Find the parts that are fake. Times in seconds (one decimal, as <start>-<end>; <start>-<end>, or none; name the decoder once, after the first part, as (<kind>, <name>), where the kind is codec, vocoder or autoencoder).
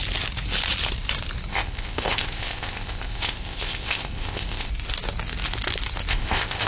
1.5-4.7 (codec, ZipCodec); 6.1-6.7